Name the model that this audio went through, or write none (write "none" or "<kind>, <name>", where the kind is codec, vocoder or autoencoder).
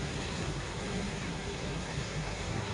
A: codec, SNAC